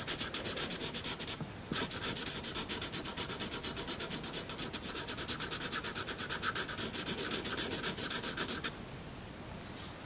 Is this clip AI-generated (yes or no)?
no